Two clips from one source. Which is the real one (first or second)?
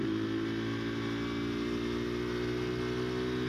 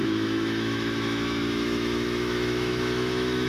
first